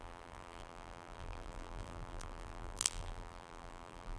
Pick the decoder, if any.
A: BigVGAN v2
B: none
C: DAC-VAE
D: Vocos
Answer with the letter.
A